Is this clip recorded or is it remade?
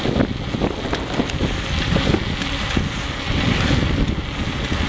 recorded